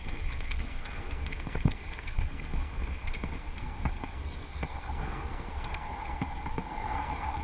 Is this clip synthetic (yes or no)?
yes